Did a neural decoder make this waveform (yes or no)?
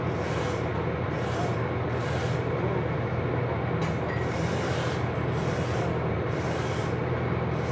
no